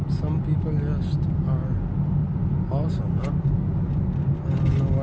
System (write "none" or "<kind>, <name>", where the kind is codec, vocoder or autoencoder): none